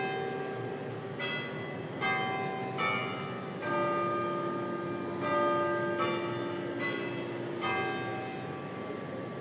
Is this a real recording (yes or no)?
yes